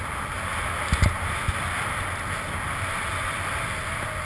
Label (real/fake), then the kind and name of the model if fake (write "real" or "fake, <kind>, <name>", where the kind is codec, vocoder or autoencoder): real